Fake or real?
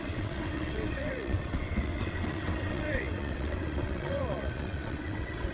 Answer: fake